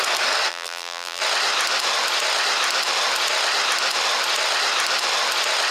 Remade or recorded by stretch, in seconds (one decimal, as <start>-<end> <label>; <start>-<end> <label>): 0.0-0.5 recorded; 0.5-1.2 remade; 1.2-5.7 recorded